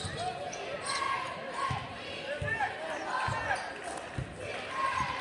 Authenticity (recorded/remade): recorded